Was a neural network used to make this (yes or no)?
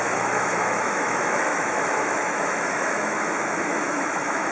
yes